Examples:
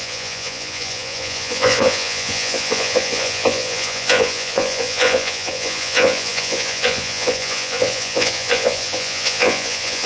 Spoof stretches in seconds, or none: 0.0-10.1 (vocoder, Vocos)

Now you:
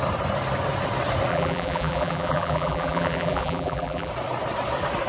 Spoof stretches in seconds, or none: 1.3-4.1 (vocoder, BigVGAN v2)

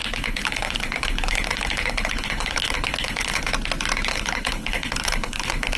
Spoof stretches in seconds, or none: 0.0-3.5 (codec, HILCodec); 4.1-5.8

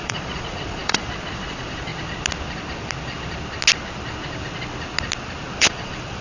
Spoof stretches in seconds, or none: 0.0-1.9 (vocoder, Vocos); 5.6-6.2

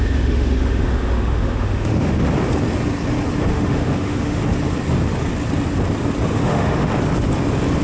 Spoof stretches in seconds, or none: 0.0-2.1 (autoencoder, DAC-VAE); 3.5-4.4; 6.3-6.9

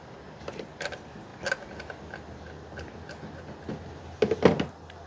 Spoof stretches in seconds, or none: none